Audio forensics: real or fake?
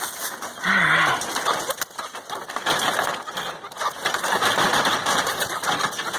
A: real